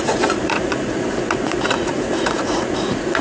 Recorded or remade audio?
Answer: remade